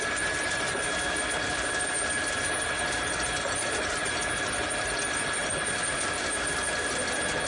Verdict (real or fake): real